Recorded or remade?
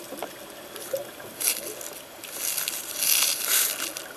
recorded